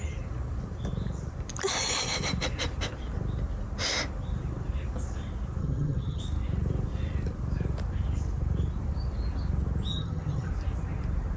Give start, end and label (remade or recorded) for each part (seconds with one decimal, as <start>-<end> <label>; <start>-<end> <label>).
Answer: 0.0-5.6 recorded; 5.6-6.2 remade; 6.2-9.9 recorded; 9.9-10.5 remade; 10.5-11.4 recorded